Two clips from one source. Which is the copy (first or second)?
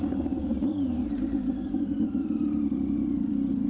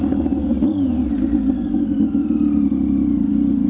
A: first